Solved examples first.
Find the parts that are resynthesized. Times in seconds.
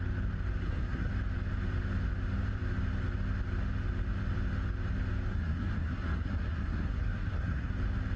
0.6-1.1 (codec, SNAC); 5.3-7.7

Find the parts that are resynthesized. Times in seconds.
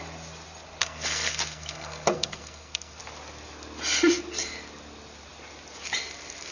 0.8-3.0 (codec, SNAC)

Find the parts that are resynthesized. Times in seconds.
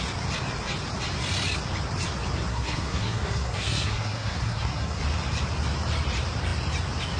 2.5-5.0 (codec, SNAC)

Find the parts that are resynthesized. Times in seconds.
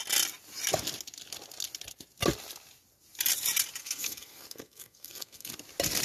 3.8-5.5 (codec, SNAC)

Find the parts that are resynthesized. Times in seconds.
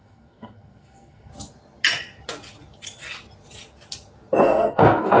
0.0-1.3 (codec, SNAC); 4.4-5.2